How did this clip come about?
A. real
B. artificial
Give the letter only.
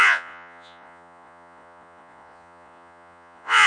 B